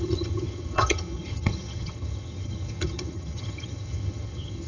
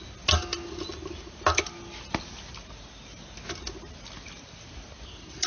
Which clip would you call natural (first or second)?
second